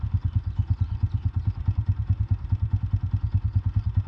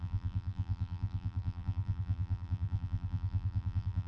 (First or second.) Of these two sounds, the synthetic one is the second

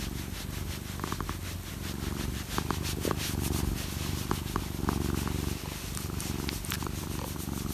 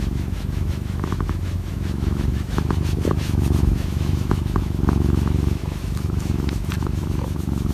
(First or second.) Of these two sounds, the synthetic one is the second